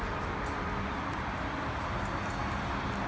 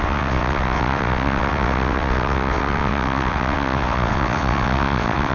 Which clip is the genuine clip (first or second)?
first